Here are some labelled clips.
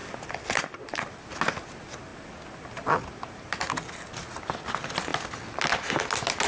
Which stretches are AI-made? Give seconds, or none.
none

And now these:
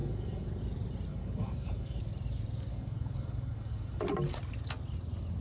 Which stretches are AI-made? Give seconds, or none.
0.0-0.6 (codec, DAC); 1.1-2.0; 2.7-4.0

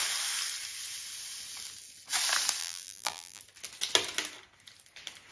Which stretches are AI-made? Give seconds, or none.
2.6-3.4 (vocoder, BigVGAN v2)

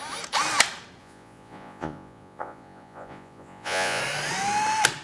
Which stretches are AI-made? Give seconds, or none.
1.0-4.0 (vocoder, Vocos)

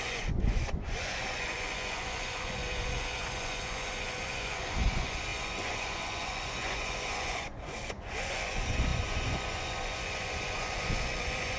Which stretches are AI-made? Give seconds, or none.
0.0-11.6 (vocoder, Vocos)

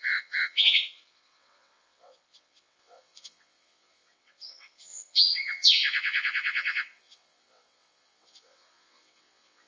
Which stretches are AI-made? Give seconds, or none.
0.0-9.7 (vocoder, WaveNeXt)